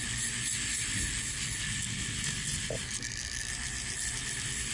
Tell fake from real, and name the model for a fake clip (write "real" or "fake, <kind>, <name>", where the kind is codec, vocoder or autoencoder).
real